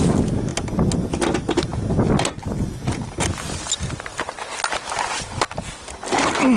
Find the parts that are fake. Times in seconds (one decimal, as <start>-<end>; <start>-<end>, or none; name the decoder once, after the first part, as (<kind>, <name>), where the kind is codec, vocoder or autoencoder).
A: none